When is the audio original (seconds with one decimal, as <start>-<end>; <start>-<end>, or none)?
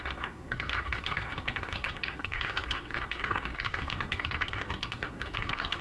none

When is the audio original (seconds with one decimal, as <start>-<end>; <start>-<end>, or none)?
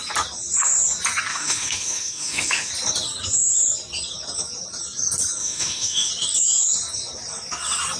0.0-1.3; 2.7-5.4; 6.1-8.0